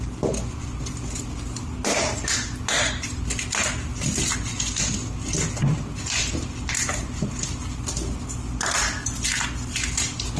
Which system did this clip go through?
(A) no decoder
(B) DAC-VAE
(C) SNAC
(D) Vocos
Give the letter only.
A